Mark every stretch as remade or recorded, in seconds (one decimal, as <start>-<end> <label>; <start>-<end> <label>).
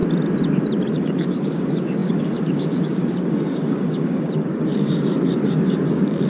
0.0-0.9 recorded; 0.9-6.3 remade